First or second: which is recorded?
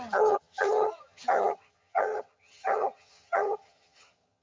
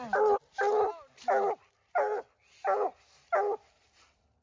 second